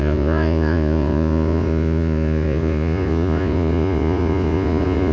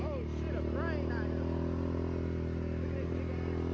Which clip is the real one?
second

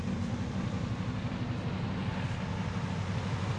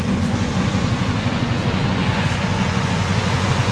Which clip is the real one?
first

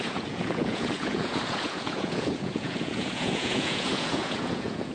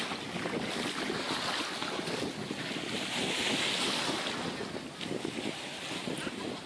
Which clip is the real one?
second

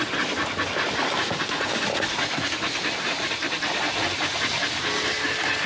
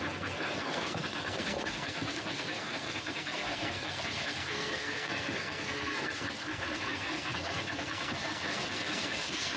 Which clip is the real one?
first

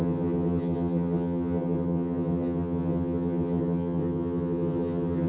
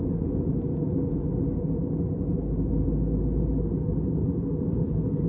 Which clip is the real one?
second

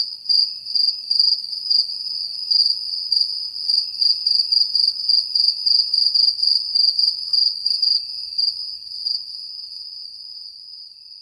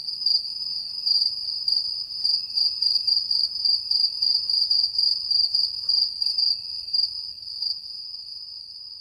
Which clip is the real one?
first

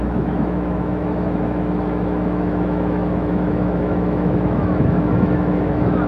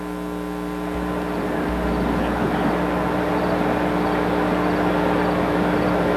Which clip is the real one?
second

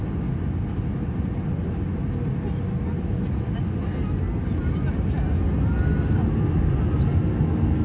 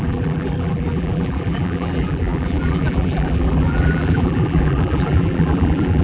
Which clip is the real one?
first